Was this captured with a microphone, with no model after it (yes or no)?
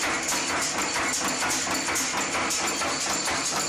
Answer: yes